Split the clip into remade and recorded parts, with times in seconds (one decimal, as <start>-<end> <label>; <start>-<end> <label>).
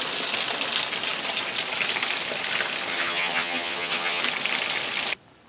0.0-2.9 recorded; 2.9-4.2 remade; 4.2-5.5 recorded